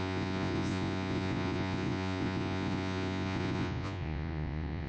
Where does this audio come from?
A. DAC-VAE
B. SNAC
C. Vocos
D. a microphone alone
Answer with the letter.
C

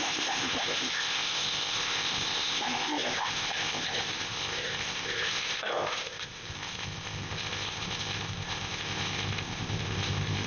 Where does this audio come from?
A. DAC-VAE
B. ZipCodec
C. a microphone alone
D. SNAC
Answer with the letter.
B